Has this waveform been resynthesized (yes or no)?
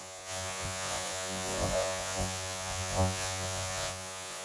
yes